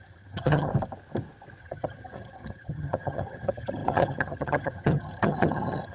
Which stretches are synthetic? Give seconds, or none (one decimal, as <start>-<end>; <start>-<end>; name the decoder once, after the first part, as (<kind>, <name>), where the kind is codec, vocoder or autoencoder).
0.0-0.7 (vocoder, HiFi-GAN); 1.6-5.9